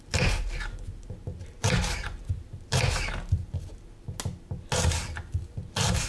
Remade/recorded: recorded